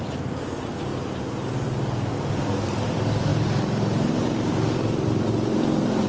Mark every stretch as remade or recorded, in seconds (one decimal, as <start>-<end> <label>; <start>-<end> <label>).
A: 0.0-0.9 remade; 0.9-1.5 recorded; 1.5-6.1 remade